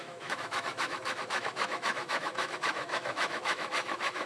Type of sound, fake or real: fake